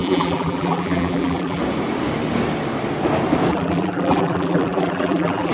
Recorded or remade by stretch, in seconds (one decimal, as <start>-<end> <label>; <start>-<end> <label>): 0.0-1.6 remade; 1.6-3.5 recorded; 3.5-5.5 remade